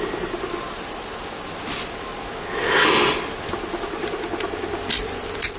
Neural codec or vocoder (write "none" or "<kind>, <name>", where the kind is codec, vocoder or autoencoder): none